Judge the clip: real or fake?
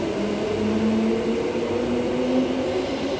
real